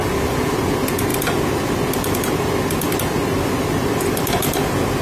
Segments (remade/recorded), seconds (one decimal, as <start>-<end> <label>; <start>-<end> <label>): 0.0-5.0 recorded